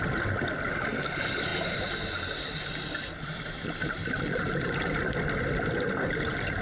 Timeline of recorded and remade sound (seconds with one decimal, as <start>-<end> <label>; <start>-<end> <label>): 0.0-6.6 recorded